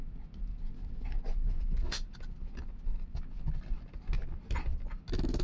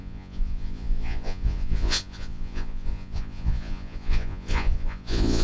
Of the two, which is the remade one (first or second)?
second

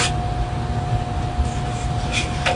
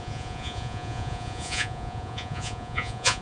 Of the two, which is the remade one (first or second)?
second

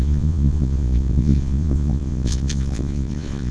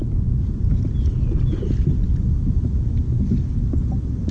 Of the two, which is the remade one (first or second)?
first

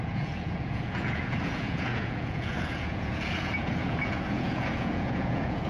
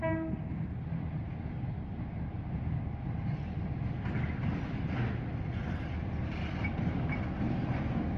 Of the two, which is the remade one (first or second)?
first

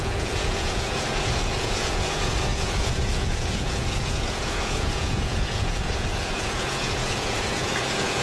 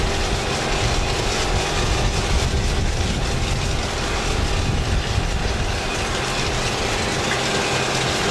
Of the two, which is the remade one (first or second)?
first